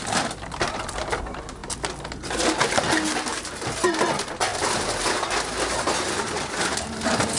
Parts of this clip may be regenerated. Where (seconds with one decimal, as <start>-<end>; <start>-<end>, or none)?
3.3-3.9